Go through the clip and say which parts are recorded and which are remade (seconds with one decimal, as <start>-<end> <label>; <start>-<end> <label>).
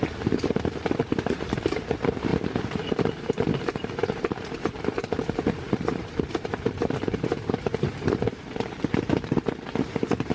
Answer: 0.0-2.3 remade; 2.3-3.1 recorded; 3.1-10.3 remade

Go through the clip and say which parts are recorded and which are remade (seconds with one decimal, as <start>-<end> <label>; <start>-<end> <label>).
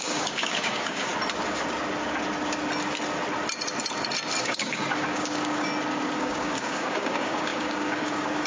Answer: 0.0-1.1 remade; 1.1-4.4 recorded; 4.4-5.7 remade; 5.7-6.2 recorded; 6.2-8.5 remade